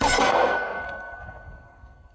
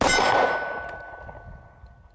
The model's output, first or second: first